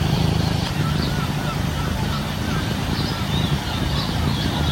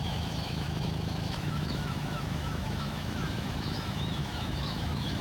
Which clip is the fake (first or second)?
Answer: second